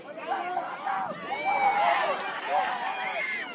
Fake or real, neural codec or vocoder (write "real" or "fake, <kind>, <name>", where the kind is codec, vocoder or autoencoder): real